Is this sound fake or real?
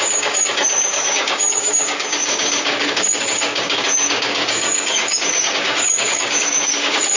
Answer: fake